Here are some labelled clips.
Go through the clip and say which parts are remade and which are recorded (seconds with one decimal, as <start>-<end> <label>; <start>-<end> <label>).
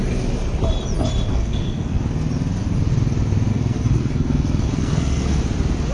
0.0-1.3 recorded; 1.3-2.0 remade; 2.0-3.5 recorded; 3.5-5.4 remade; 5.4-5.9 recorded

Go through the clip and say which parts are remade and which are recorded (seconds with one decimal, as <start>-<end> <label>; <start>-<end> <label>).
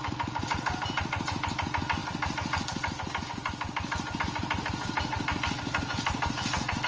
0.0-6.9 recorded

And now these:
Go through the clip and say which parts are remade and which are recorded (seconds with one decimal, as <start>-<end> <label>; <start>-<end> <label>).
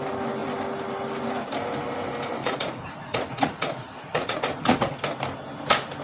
0.0-2.4 recorded; 2.4-5.0 remade; 5.0-6.0 recorded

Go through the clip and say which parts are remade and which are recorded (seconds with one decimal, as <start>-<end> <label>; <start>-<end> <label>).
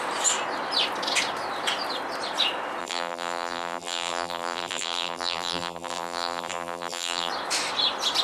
0.0-2.8 recorded; 2.8-7.3 remade; 7.3-8.2 recorded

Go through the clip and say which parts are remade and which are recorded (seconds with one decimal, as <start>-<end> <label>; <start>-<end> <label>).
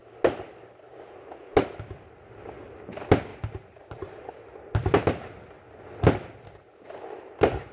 0.0-3.3 recorded; 3.3-4.3 remade; 4.3-7.7 recorded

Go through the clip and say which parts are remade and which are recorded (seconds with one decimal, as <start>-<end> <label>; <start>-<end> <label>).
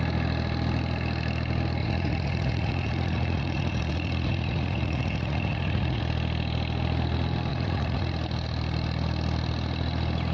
0.0-1.8 recorded; 1.8-6.0 remade; 6.0-7.5 recorded; 7.5-8.1 remade; 8.1-10.3 recorded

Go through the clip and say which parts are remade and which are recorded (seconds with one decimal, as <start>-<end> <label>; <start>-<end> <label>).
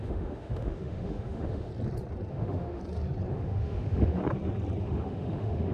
0.0-1.7 remade; 1.7-2.3 recorded; 2.3-2.8 remade; 2.8-3.3 recorded; 3.3-4.2 remade; 4.2-4.8 recorded; 4.8-5.7 remade